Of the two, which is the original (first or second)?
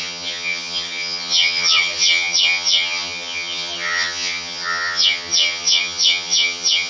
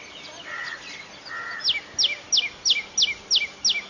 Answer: second